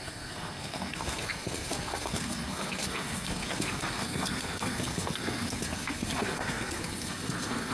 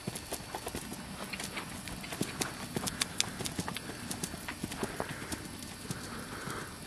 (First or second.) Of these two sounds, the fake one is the first